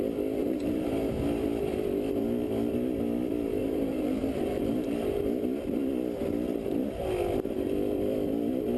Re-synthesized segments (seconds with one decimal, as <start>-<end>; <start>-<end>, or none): 0.4-1.1; 3.6-5.2